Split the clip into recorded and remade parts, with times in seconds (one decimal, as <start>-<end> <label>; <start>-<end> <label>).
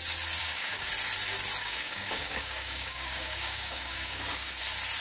0.0-0.4 recorded; 0.4-0.9 remade; 0.9-1.6 recorded; 1.6-4.6 remade; 4.6-5.0 recorded